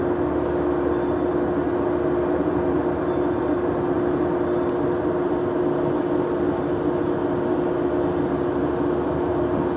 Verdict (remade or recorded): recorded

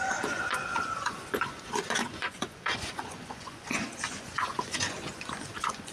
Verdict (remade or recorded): remade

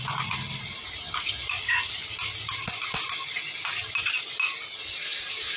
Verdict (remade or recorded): recorded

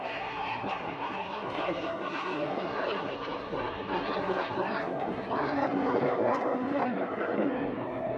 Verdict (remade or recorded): remade